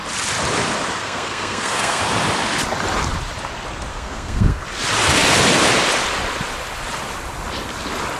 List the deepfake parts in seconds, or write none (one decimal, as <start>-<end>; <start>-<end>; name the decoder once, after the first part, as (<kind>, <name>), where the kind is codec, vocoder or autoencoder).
1.0-2.0 (codec, SNAC); 3.9-4.6